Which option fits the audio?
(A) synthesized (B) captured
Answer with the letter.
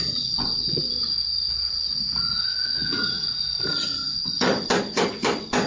B